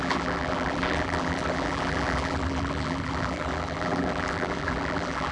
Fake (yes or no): yes